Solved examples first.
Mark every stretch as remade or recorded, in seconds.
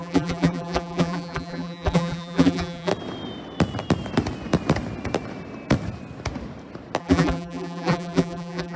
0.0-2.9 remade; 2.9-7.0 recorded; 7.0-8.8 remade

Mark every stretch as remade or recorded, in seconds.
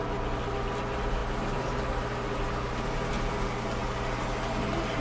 0.0-5.0 recorded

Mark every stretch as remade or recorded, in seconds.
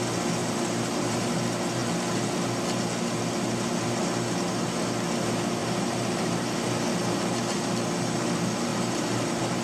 0.0-0.4 recorded; 0.4-1.4 remade; 1.4-5.6 recorded; 5.6-6.7 remade; 6.7-8.7 recorded; 8.7-9.6 remade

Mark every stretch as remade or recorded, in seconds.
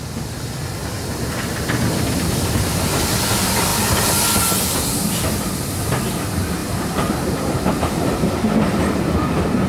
0.0-6.6 recorded; 6.6-8.3 remade; 8.3-9.7 recorded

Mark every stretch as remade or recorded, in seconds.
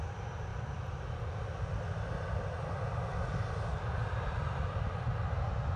0.0-0.5 recorded; 0.5-1.3 remade; 1.3-5.8 recorded